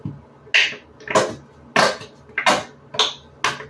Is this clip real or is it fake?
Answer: real